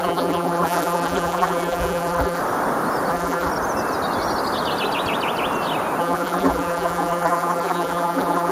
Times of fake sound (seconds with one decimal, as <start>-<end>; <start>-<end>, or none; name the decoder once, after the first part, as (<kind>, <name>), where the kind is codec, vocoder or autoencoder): 0.0-2.4 (vocoder, BigVGAN v2); 3.1-3.5; 6.0-8.5